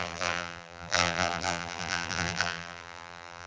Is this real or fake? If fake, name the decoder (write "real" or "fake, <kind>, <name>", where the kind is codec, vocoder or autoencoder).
fake, vocoder, BigVGAN v2